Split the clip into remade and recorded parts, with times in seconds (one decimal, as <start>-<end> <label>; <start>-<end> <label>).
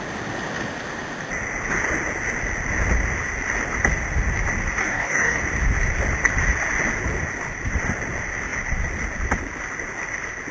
0.0-4.8 recorded; 4.8-5.4 remade; 5.4-10.5 recorded